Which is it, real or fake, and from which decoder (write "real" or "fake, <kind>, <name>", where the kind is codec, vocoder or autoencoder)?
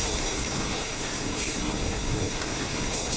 fake, codec, SNAC